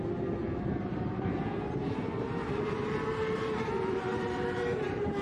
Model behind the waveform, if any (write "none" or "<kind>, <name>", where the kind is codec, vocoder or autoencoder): vocoder, BigVGAN v2